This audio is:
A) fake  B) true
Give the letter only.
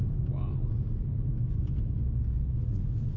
B